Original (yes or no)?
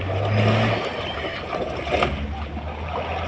yes